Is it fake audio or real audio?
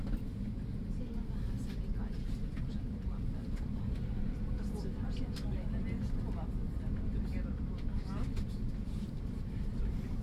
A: fake